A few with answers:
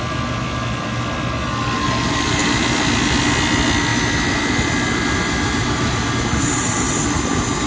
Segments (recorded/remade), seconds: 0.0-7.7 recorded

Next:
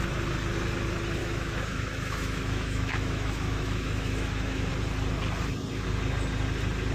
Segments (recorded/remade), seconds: 0.0-1.2 recorded; 1.2-4.7 remade; 4.7-6.9 recorded

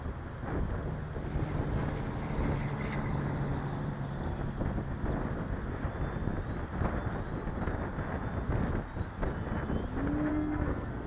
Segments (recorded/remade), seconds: 0.0-10.3 recorded; 10.3-11.1 remade